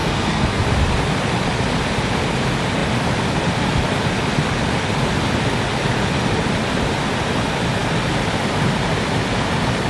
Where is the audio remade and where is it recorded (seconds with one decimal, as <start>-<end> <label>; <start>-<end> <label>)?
0.0-0.6 remade; 0.6-9.9 recorded